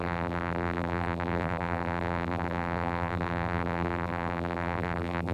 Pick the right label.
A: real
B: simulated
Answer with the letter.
B